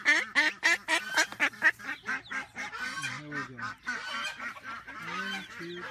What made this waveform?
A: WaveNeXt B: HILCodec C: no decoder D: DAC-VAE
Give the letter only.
C